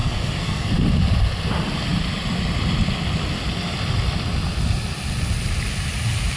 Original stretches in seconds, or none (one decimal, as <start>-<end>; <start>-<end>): 0.7-6.4